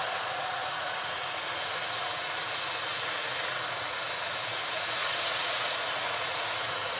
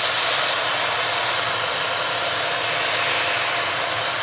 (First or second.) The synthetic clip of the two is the first